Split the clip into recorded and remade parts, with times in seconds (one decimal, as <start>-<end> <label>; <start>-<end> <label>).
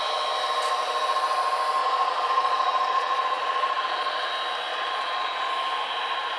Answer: 0.0-1.8 recorded; 1.8-4.3 remade; 4.3-4.7 recorded; 4.7-5.5 remade; 5.5-6.4 recorded